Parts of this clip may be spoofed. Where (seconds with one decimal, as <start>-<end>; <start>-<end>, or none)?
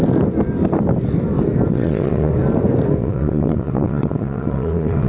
1.7-2.3; 3.0-5.1